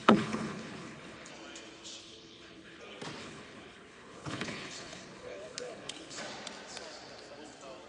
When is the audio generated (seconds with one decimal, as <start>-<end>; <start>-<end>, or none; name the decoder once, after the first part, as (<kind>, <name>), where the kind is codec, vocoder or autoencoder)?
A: 0.0-1.3 (codec, HILCodec); 2.0-2.8; 3.2-6.2